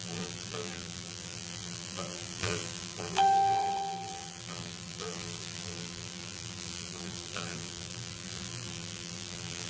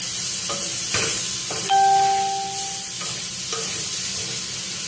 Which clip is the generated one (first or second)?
first